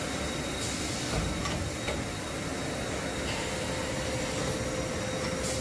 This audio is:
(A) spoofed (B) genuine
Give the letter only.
B